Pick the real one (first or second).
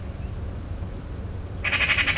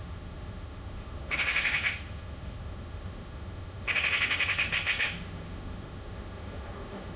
first